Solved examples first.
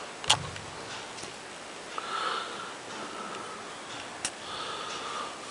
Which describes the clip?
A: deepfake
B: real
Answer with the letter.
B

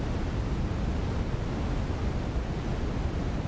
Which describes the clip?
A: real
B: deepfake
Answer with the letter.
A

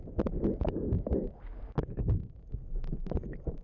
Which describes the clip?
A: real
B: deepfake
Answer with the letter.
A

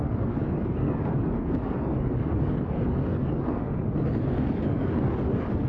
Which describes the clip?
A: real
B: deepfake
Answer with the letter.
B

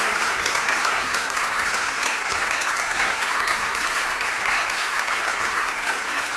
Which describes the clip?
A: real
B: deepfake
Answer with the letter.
B